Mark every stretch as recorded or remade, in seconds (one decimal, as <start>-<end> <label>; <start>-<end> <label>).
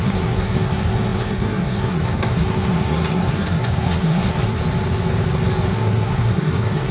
0.0-4.6 remade; 4.6-5.7 recorded; 5.7-6.9 remade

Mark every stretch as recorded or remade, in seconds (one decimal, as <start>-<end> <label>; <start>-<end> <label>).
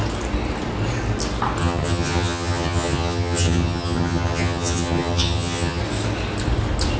0.0-1.6 recorded; 1.6-5.8 remade; 5.8-7.0 recorded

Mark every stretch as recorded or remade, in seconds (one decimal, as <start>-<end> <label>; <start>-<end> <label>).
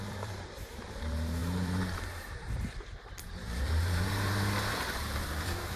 0.0-5.8 remade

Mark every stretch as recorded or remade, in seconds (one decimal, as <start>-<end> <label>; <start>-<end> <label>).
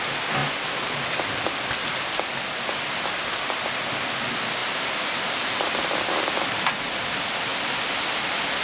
0.0-8.6 recorded